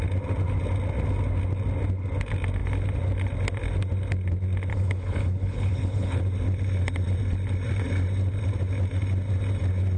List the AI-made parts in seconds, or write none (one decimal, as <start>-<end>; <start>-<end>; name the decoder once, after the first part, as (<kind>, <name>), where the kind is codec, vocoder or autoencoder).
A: 4.7-6.2 (codec, HILCodec)